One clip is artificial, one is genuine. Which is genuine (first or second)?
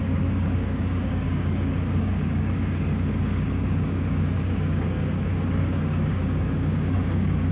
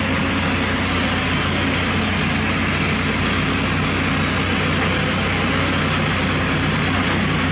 second